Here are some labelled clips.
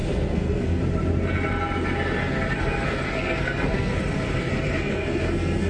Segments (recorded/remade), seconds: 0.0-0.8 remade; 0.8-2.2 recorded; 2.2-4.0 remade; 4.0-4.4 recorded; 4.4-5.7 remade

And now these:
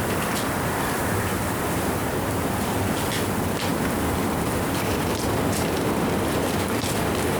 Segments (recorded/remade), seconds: 0.0-2.0 remade; 2.0-2.6 recorded; 2.6-7.4 remade

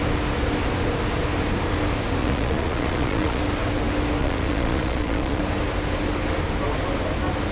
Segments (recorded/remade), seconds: 0.0-2.2 recorded; 2.2-3.4 remade; 3.4-4.2 recorded; 4.2-5.4 remade; 5.4-7.5 recorded

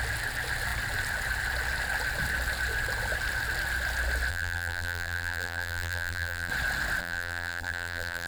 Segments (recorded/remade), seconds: 0.0-4.3 recorded; 4.3-6.5 remade; 6.5-7.0 recorded; 7.0-8.3 remade

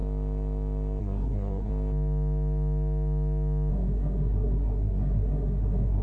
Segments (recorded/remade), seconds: 0.0-1.0 recorded; 1.0-1.7 remade; 1.7-3.7 recorded; 3.7-6.0 remade

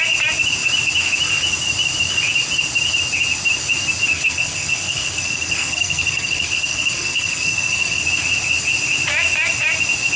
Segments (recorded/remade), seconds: 0.0-4.1 recorded; 4.1-8.0 remade; 8.0-10.2 recorded

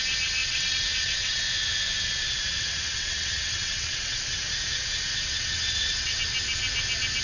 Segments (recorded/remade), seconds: 0.0-0.4 recorded; 0.4-1.4 remade; 1.4-2.5 recorded; 2.5-4.2 remade; 4.2-5.1 recorded; 5.1-6.2 remade; 6.2-7.2 recorded